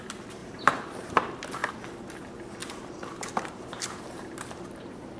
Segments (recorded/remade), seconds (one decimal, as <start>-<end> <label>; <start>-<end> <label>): 0.0-0.4 recorded; 0.4-1.1 remade; 1.1-2.6 recorded; 2.6-5.2 remade